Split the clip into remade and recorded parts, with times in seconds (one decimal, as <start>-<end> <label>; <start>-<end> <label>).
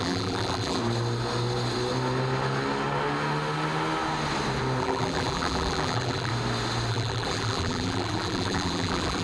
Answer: 0.0-0.8 remade; 0.8-4.8 recorded; 4.8-6.3 remade; 6.3-6.9 recorded; 6.9-9.2 remade